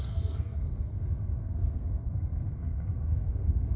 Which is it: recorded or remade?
remade